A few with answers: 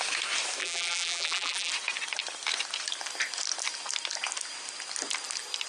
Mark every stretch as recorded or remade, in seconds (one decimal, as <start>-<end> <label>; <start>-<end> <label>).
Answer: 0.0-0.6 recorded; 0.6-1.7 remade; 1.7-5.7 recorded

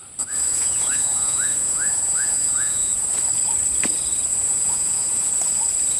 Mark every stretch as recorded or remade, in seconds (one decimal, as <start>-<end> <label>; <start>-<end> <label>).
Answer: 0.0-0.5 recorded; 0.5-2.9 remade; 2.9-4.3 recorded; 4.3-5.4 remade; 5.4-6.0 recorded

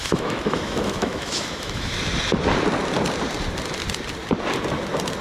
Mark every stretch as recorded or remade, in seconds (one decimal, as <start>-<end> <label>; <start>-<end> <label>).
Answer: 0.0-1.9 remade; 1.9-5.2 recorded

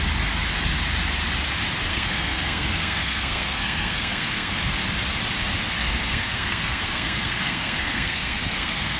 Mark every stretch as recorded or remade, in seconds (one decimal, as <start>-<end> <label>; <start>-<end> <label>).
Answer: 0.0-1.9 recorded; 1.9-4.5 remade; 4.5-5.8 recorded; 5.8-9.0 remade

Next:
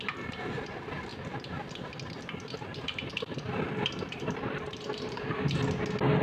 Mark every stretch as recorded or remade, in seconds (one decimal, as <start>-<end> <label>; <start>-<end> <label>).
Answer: 0.0-2.7 recorded; 2.7-5.6 remade; 5.6-6.2 recorded

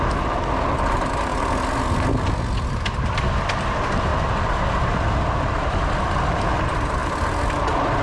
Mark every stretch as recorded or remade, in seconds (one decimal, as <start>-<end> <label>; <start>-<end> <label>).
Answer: 0.0-1.3 remade; 1.3-2.7 recorded; 2.7-8.0 remade

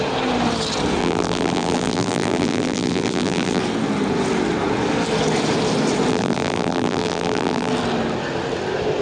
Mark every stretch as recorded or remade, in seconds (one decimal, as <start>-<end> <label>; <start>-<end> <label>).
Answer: 0.0-1.0 recorded; 1.0-3.6 remade; 3.6-6.1 recorded; 6.1-7.7 remade; 7.7-9.0 recorded